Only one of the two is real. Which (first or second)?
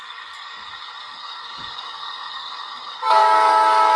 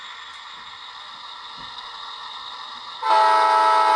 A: second